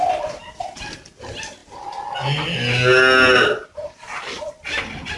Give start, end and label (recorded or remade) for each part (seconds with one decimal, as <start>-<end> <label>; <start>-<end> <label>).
0.0-5.2 recorded